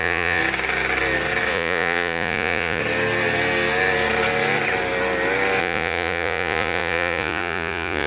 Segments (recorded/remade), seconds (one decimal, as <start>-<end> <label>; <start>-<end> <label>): 0.0-0.4 remade; 0.4-1.5 recorded; 1.5-2.8 remade; 2.8-5.6 recorded; 5.6-8.1 remade